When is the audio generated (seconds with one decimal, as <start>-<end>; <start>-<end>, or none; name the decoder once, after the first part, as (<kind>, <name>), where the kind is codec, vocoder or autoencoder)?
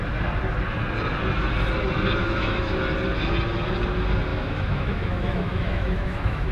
2.2-2.8 (autoencoder, DAC-VAE); 4.3-6.5